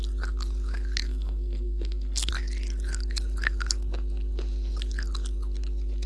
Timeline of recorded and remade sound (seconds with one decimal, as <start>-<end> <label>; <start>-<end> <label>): 0.0-1.0 recorded; 1.0-2.3 remade; 2.3-6.1 recorded